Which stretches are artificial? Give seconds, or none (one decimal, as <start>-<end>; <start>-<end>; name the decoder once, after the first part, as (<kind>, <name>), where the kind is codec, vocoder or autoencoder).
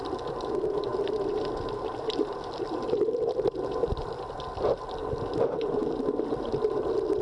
none